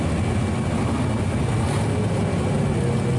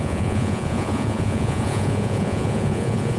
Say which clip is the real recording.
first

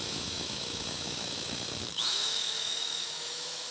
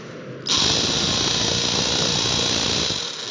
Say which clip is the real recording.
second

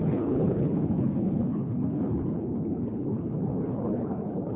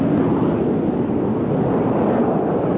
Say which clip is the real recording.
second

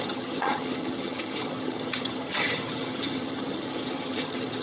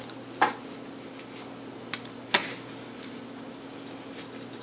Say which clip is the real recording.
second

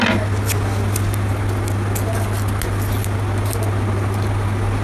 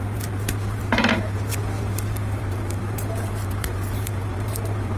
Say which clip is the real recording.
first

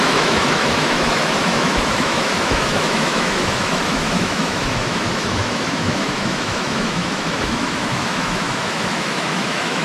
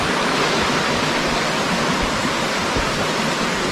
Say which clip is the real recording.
second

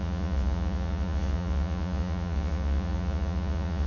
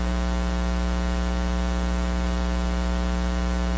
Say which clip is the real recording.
second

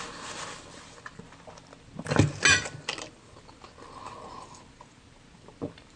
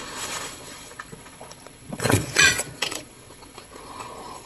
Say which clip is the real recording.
first